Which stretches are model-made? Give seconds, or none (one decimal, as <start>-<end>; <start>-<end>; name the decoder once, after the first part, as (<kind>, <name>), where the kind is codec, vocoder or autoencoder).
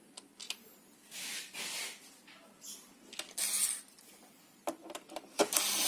none